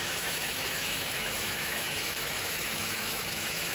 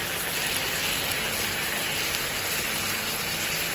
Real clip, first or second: second